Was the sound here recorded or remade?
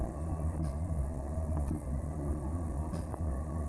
remade